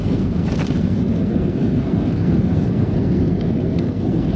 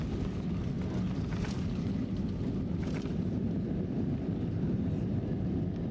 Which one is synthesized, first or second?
first